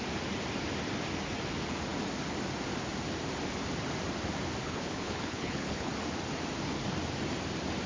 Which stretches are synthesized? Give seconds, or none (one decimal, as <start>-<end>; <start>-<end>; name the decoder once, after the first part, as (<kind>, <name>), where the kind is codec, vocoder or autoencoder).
4.6-5.9 (codec, HILCodec)